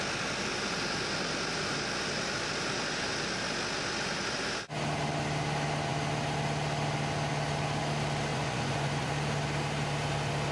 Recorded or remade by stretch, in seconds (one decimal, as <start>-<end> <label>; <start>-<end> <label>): 0.0-8.3 recorded; 8.3-9.1 remade; 9.1-10.5 recorded